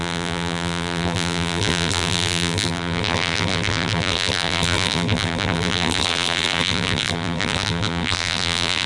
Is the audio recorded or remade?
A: remade